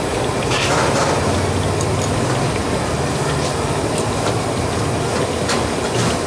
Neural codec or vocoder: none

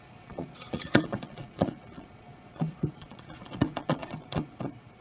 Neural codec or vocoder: vocoder, Vocos